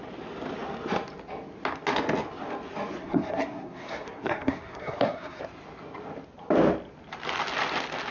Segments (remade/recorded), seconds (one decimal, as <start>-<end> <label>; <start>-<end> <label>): 0.0-3.0 recorded; 3.0-5.4 remade; 5.4-8.1 recorded